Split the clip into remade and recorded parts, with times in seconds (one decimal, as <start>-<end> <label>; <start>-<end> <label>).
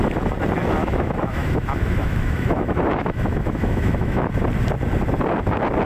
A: 0.0-0.8 recorded; 0.8-4.3 remade; 4.3-5.9 recorded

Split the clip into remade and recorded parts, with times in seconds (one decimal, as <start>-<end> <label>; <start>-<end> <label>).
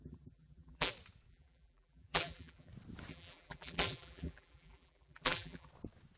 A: 0.0-0.9 remade; 0.9-1.3 recorded; 1.3-2.7 remade; 2.7-3.1 recorded; 3.1-5.7 remade; 5.7-6.2 recorded